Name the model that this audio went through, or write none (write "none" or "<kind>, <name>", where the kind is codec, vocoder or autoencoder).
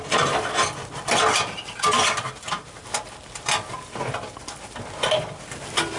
vocoder, BigVGAN v2